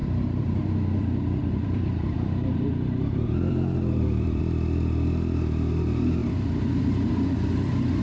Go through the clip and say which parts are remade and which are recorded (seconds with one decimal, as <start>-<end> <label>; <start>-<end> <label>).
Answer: 0.0-4.4 remade; 4.4-6.2 recorded; 6.2-7.1 remade; 7.1-8.0 recorded